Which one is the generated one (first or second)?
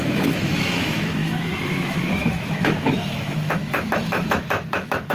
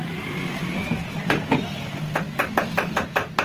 first